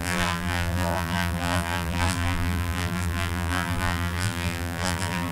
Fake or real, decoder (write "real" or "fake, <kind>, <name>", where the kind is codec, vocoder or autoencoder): fake, vocoder, BigVGAN v2